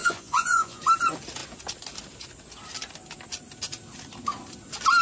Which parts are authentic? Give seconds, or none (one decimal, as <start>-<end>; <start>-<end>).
0.8-5.0